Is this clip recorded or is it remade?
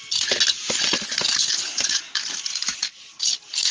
recorded